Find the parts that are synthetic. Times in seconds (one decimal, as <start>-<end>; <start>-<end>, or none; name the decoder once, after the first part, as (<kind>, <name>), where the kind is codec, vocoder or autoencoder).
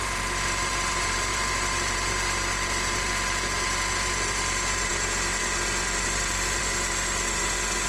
0.0-7.9 (vocoder, BigVGAN v2)